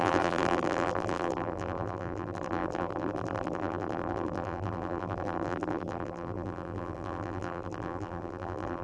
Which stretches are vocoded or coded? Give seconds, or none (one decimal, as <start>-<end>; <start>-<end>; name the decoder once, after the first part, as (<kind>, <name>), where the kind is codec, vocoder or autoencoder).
0.0-8.8 (vocoder, BigVGAN v2)